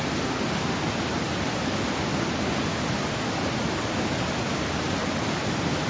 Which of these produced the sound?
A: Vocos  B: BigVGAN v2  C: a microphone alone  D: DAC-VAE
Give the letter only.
C